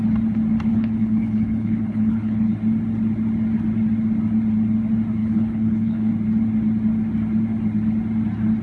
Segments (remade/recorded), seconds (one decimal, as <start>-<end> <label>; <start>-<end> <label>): 0.0-0.7 recorded; 0.7-2.5 remade; 2.5-5.2 recorded; 5.2-6.1 remade; 6.1-8.6 recorded